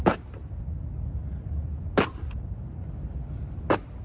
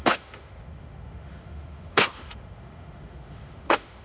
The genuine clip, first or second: first